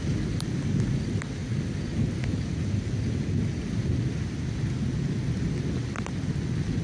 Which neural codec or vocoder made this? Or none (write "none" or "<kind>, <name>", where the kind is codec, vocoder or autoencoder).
none